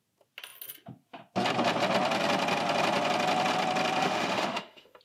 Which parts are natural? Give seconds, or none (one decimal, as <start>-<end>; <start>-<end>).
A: 0.0-4.0